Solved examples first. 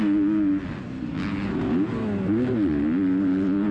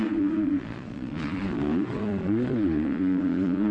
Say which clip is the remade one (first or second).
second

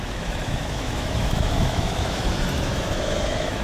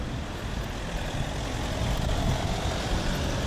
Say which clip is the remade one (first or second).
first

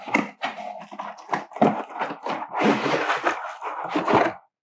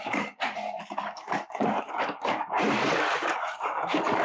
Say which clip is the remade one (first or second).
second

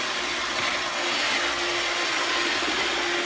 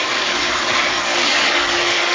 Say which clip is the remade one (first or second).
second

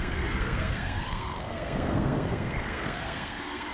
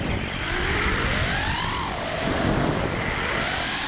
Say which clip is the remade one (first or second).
first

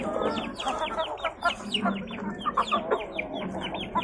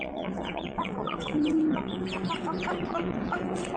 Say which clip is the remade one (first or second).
second